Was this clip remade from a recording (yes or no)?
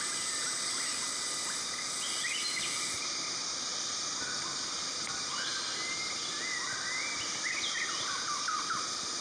no